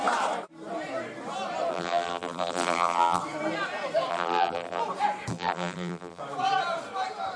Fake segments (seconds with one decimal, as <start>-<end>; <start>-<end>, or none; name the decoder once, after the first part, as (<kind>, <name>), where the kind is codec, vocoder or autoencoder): 1.7-3.2 (vocoder, BigVGAN v2); 4.1-4.8; 5.3-6.2